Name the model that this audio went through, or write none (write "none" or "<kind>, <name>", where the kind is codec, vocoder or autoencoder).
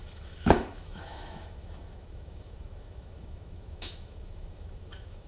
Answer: autoencoder, DAC-VAE